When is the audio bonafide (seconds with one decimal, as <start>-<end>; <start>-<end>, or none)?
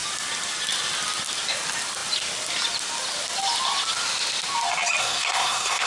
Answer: 0.0-5.0